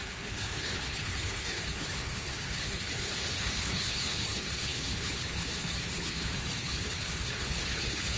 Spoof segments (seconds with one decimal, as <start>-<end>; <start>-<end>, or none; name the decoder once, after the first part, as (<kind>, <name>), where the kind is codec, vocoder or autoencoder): 0.0-8.2 (codec, HILCodec)